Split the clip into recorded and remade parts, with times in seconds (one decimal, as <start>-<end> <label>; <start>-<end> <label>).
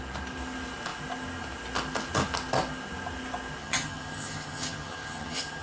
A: 0.0-3.6 recorded; 3.6-5.6 remade